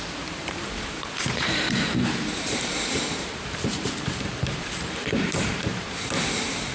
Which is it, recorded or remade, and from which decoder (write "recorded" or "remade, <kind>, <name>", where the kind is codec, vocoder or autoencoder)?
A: remade, vocoder, BigVGAN v2